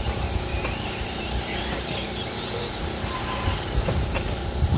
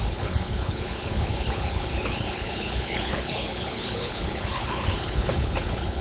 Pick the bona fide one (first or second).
first